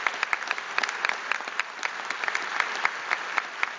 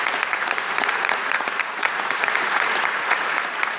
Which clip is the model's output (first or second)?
second